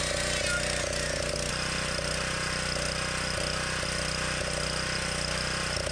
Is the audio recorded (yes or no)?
yes